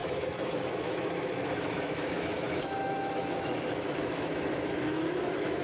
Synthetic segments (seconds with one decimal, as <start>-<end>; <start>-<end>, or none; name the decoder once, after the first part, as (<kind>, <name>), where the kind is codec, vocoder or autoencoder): 0.0-5.6 (autoencoder, DAC-VAE)